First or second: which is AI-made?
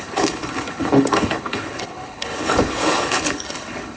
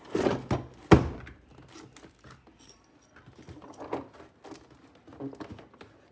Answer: first